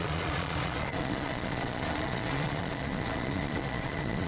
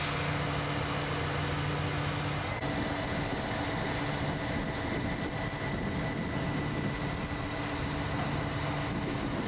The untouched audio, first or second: second